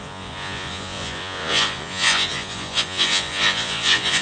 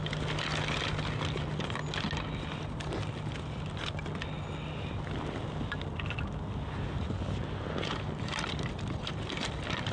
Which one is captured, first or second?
second